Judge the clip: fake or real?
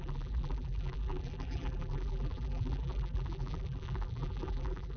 fake